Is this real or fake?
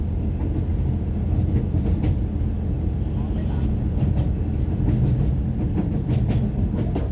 real